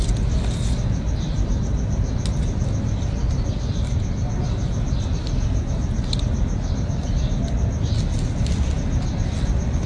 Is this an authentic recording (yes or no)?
yes